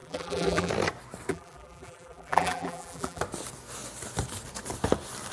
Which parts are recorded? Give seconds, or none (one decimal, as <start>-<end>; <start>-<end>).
0.7-1.3; 3.2-5.3